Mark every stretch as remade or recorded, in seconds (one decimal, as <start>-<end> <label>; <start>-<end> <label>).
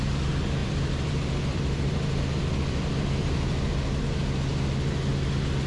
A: 0.0-0.6 recorded; 0.6-4.0 remade; 4.0-5.7 recorded